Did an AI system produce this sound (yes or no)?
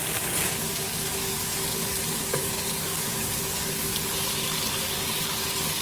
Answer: yes